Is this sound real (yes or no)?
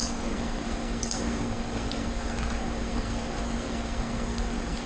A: no